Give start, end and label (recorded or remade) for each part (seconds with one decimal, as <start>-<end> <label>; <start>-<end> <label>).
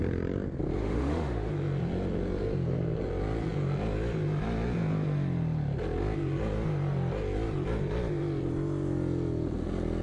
0.0-0.8 recorded; 0.8-1.5 remade; 1.5-10.0 recorded